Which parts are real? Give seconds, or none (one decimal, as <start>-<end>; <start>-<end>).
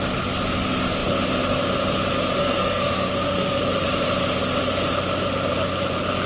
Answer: 0.0-2.4; 3.6-6.3